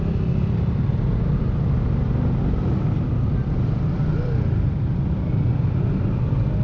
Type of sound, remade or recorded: recorded